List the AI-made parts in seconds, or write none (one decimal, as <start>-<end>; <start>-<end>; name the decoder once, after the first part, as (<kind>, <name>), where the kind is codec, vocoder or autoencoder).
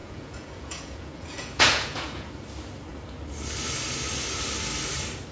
0.0-2.3 (vocoder, Vocos)